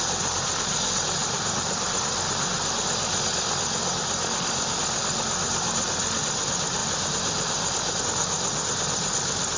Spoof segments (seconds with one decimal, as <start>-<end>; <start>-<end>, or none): 1.2-2.0; 6.8-8.0